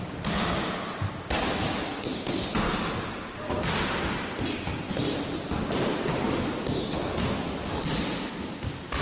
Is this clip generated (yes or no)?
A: no